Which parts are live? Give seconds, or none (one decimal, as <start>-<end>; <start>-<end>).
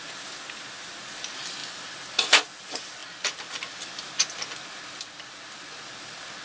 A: 0.0-6.4